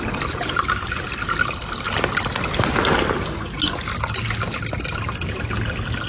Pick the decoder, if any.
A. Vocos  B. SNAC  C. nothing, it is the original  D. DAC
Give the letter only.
C